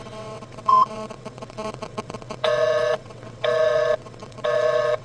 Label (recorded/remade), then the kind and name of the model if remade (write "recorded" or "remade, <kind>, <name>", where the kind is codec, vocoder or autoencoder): remade, vocoder, WaveNeXt